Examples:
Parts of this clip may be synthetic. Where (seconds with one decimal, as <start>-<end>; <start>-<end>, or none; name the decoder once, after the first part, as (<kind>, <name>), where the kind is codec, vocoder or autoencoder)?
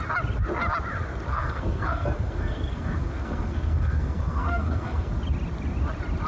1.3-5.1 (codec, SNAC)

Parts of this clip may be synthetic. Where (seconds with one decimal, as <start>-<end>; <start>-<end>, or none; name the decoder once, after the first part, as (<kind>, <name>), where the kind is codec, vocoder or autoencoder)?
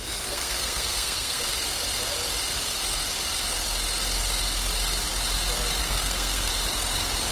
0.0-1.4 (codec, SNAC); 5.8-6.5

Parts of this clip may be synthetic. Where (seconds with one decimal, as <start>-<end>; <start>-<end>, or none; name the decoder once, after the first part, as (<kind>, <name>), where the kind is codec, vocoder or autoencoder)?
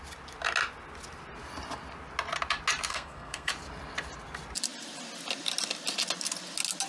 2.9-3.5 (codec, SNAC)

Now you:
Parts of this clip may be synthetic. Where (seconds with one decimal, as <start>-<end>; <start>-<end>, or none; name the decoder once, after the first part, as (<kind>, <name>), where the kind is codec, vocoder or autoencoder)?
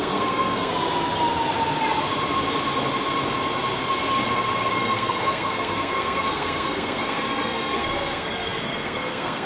0.0-0.7 (codec, SNAC); 4.7-9.5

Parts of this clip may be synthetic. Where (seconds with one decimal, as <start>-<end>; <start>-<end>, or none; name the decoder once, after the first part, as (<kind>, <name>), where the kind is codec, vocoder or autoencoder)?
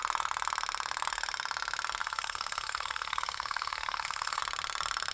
2.0-4.4 (codec, SNAC)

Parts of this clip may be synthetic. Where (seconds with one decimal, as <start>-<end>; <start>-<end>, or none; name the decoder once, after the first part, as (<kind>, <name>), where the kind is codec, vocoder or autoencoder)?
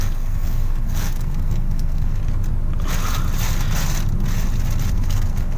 0.0-2.2 (codec, SNAC); 4.9-5.6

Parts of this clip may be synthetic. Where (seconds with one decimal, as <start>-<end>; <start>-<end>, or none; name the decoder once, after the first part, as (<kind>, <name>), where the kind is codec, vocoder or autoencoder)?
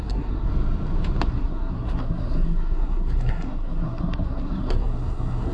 0.0-0.5 (codec, SNAC); 1.3-5.5